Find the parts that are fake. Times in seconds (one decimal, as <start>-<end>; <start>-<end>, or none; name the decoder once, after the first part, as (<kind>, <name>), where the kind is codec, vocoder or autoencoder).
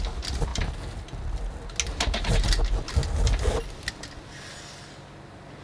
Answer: none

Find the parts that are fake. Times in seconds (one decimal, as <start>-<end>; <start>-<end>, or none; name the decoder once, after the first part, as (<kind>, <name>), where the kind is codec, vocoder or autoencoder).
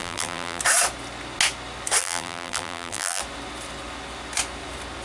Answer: 0.0-0.6 (vocoder, BigVGAN v2); 2.0-3.2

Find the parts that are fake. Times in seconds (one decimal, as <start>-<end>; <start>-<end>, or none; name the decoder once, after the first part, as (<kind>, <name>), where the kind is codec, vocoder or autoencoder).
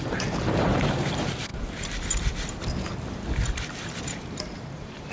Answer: 0.0-1.5 (vocoder, BigVGAN v2); 4.0-5.1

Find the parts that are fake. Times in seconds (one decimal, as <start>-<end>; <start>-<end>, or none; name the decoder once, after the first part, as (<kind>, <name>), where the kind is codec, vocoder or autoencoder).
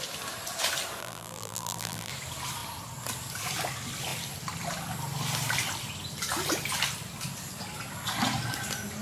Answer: 1.0-2.1 (vocoder, BigVGAN v2)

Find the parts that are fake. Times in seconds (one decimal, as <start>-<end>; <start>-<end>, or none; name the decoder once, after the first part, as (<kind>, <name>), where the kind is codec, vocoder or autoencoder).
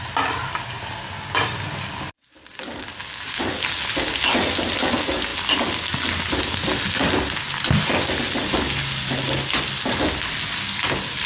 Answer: none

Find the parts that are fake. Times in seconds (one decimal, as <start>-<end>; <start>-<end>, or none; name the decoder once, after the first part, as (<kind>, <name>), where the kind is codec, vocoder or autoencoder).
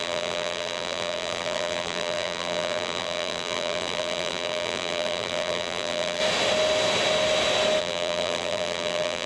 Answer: 0.0-6.2 (vocoder, BigVGAN v2); 7.8-9.3